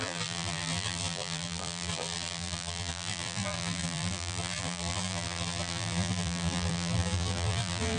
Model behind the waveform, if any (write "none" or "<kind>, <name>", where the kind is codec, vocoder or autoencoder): vocoder, BigVGAN v2